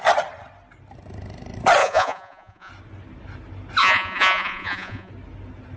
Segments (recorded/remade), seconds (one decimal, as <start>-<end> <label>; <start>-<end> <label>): 0.0-1.8 recorded; 1.8-2.7 remade; 2.7-3.8 recorded; 3.8-5.1 remade; 5.1-5.8 recorded